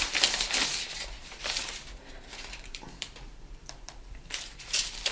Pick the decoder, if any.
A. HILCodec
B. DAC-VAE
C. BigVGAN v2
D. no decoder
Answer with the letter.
C